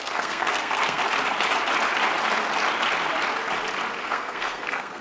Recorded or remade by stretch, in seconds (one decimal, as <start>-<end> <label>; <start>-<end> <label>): 0.0-1.0 remade; 1.0-4.0 recorded; 4.0-5.0 remade

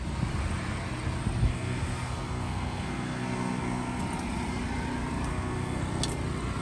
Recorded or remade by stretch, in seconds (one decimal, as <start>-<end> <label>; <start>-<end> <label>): 0.0-1.5 recorded; 1.5-4.0 remade; 4.0-5.3 recorded; 5.3-5.8 remade; 5.8-6.6 recorded

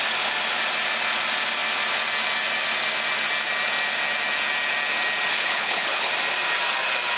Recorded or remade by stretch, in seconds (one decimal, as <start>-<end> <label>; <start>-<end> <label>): 0.0-5.3 recorded; 5.3-6.1 remade; 6.1-7.2 recorded

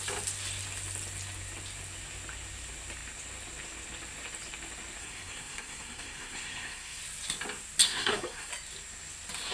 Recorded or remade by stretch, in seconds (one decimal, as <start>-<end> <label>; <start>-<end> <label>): 0.0-5.0 recorded; 5.0-7.0 remade; 7.0-7.8 recorded; 7.8-8.5 remade; 8.5-9.5 recorded

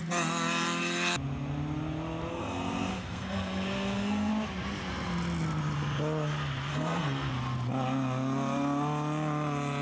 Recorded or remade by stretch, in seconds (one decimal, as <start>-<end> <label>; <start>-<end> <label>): 0.0-2.3 recorded; 2.3-4.3 remade; 4.3-6.7 recorded; 6.7-7.3 remade; 7.3-9.8 recorded

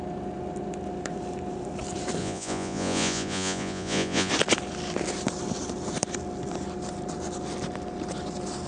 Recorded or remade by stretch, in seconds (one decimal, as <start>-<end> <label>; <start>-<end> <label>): 0.0-2.2 recorded; 2.2-4.3 remade; 4.3-8.7 recorded

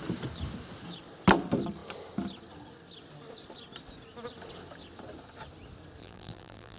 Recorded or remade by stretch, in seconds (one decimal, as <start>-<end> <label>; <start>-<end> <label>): 0.0-6.0 recorded; 6.0-6.8 remade

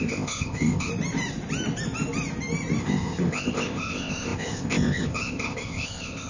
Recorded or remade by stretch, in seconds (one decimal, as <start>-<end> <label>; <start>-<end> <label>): 0.0-0.9 remade; 0.9-2.8 recorded; 2.8-6.3 remade